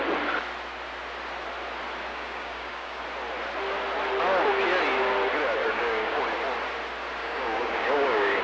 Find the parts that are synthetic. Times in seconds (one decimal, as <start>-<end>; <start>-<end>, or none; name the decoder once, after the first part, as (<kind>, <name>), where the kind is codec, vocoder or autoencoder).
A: 2.1-3.0 (codec, DAC); 5.6-6.2; 7.2-8.4